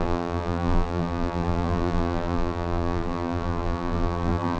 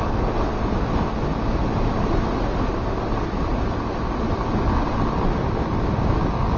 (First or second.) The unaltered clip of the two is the second